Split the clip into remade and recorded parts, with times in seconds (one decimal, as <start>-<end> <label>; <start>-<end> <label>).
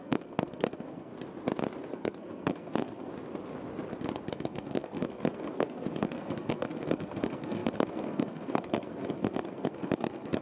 0.0-1.1 remade; 1.1-1.9 recorded; 1.9-3.1 remade; 3.1-4.3 recorded; 4.3-10.4 remade